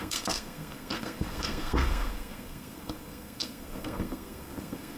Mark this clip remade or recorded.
remade